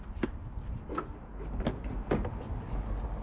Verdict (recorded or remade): recorded